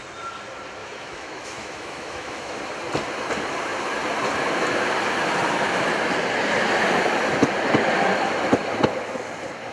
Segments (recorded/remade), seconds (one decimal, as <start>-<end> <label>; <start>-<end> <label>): 0.0-0.8 recorded; 0.8-2.5 remade; 2.5-9.7 recorded